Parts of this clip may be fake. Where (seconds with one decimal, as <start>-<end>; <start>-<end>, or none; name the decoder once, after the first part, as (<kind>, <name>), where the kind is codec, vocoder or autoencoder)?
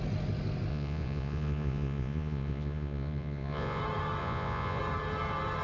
0.7-3.8 (vocoder, Vocos); 4.2-4.8